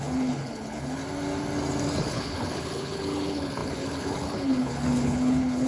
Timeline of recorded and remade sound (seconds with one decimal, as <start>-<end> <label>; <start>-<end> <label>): 0.0-1.0 remade; 1.0-2.0 recorded; 2.0-5.7 remade